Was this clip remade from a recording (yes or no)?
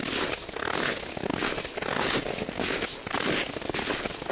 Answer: no